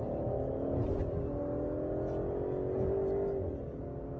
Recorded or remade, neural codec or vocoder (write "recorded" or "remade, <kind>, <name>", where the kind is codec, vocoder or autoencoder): recorded